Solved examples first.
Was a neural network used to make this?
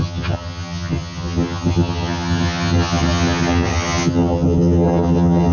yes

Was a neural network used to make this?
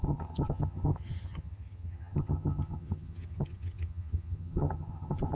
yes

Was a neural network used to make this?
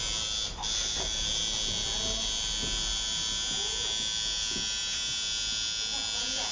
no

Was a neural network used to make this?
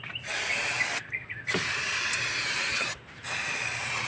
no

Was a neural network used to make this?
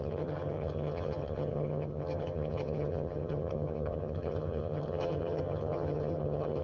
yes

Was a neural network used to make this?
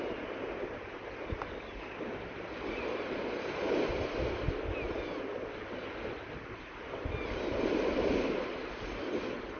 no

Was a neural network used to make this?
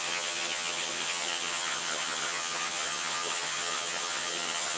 yes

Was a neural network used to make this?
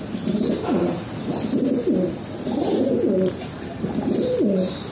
no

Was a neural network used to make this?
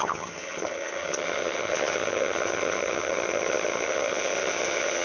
yes